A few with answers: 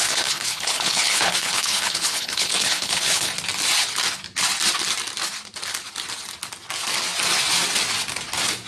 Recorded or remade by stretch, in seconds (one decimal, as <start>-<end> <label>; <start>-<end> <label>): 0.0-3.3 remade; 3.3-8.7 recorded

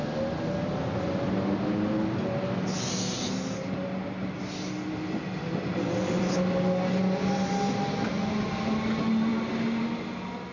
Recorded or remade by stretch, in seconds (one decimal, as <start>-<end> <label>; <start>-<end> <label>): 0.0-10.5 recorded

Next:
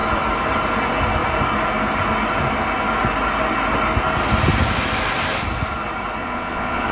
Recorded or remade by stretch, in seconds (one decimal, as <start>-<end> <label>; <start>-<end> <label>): 0.0-6.2 recorded; 6.2-6.9 remade

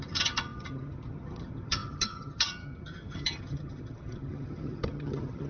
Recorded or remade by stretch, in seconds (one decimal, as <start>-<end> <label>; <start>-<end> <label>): 0.0-5.5 remade

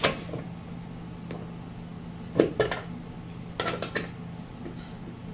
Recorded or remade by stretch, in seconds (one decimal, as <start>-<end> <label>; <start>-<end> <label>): 0.0-5.3 recorded

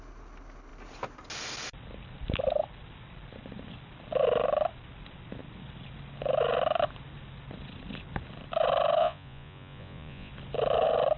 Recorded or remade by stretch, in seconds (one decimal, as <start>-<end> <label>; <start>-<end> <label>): 0.0-9.0 recorded; 9.0-10.3 remade; 10.3-11.2 recorded